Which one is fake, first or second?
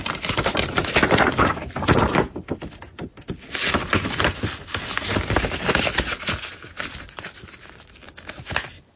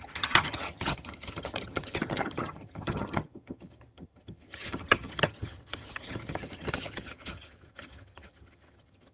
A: second